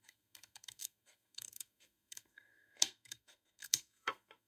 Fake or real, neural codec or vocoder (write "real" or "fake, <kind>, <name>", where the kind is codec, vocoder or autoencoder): fake, codec, SNAC